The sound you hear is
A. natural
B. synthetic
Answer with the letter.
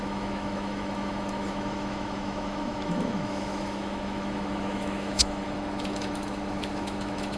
B